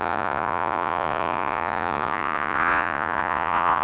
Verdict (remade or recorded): remade